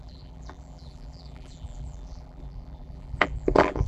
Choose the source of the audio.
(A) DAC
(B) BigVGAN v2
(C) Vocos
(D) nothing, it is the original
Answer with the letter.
B